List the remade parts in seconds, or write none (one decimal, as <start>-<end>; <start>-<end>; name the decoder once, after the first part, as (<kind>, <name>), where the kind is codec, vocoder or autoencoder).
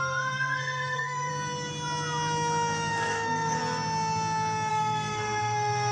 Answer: 0.0-1.3 (codec, SNAC); 2.9-3.6; 4.7-5.9